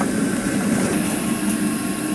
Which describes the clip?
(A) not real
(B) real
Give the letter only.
A